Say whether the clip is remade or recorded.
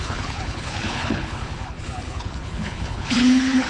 remade